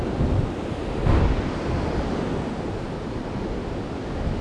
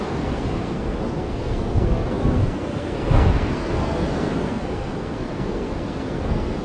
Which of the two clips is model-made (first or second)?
second